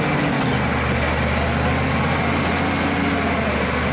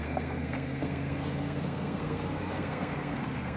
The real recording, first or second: first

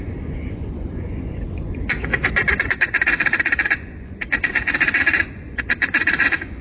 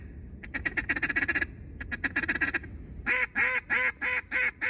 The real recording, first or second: second